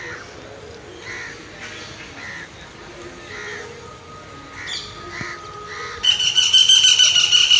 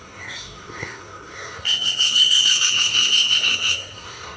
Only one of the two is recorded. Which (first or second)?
first